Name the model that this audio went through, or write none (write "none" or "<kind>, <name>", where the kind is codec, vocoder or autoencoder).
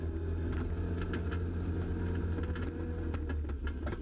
none